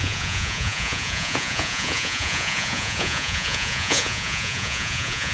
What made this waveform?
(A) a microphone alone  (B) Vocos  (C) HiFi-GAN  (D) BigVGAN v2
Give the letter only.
B